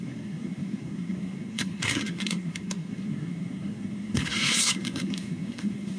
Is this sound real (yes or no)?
no